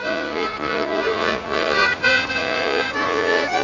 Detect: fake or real fake